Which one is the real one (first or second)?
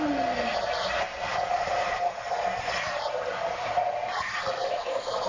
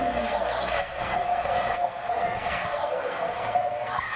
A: first